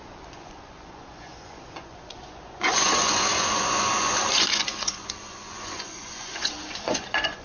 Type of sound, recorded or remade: remade